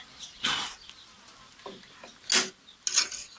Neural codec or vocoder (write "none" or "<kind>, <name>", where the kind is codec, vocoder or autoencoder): none